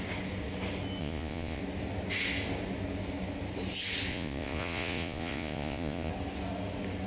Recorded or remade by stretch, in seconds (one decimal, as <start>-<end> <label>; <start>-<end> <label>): 0.0-1.0 recorded; 1.0-1.6 remade; 1.6-4.1 recorded; 4.1-6.1 remade; 6.1-7.1 recorded

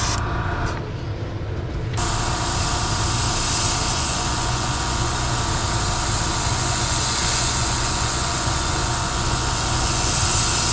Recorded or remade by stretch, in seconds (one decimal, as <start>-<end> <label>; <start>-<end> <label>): 0.0-4.0 recorded; 4.0-5.3 remade; 5.3-6.5 recorded; 6.5-10.1 remade; 10.1-10.7 recorded

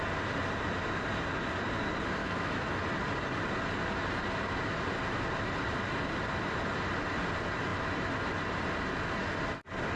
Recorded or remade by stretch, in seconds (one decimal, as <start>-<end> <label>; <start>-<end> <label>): 0.0-2.2 recorded; 2.2-2.8 remade; 2.8-10.0 recorded

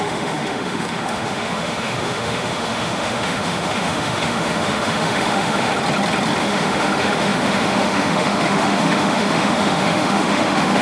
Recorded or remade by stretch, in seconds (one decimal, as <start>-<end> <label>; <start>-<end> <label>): 0.0-5.7 remade; 5.7-6.4 recorded; 6.4-10.8 remade

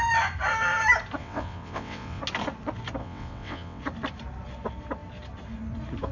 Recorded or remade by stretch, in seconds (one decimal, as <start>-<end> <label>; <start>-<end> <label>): 0.0-1.2 recorded; 1.2-2.2 remade; 2.2-3.0 recorded; 3.0-3.8 remade; 3.8-6.1 recorded